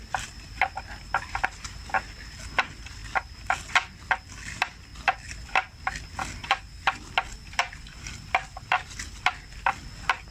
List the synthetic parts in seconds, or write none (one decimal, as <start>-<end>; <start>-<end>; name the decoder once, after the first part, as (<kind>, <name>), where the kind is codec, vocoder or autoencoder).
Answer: none